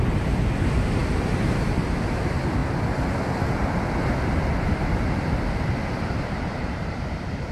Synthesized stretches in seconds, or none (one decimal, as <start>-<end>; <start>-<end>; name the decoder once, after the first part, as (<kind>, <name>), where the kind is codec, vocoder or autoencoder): 0.0-2.6 (vocoder, BigVGAN v2); 6.1-7.5